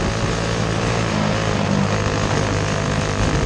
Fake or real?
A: real